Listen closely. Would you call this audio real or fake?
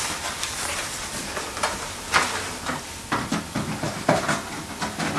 real